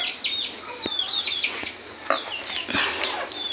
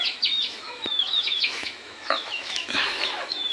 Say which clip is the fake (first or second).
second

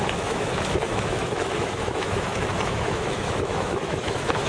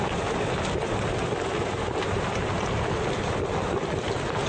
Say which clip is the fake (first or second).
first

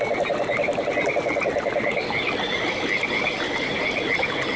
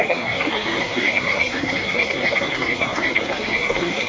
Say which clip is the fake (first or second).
second